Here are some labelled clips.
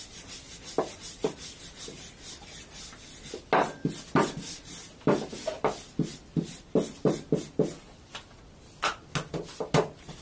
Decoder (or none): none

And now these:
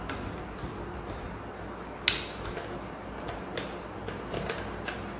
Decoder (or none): none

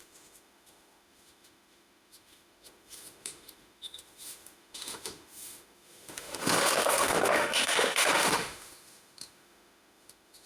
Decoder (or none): autoencoder, DAC-VAE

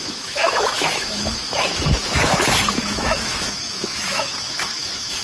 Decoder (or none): autoencoder, DAC-VAE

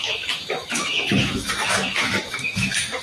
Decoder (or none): autoencoder, DAC-VAE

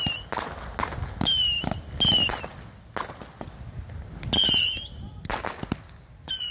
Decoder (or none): none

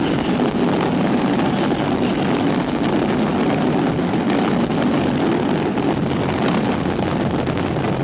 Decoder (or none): none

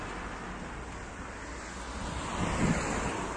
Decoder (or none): none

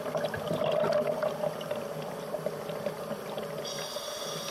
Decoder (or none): none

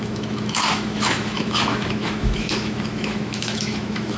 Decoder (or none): autoencoder, DAC-VAE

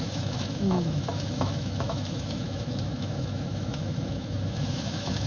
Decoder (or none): autoencoder, DAC-VAE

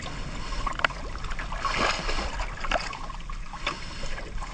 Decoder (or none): none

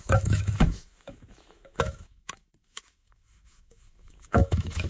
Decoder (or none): autoencoder, DAC-VAE